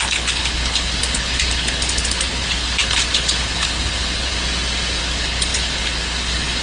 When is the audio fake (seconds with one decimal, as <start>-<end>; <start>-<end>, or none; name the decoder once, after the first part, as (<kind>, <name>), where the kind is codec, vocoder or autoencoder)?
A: 0.0-4.3 (codec, HILCodec); 5.0-6.6